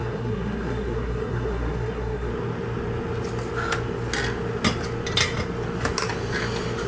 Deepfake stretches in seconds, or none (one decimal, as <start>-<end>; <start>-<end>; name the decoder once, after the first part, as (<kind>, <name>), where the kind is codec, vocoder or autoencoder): 0.0-2.3 (codec, SNAC)